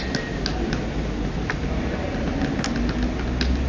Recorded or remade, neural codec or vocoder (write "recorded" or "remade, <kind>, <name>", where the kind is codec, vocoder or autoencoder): recorded